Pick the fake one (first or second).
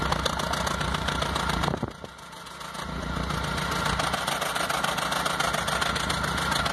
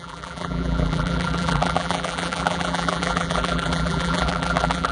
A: second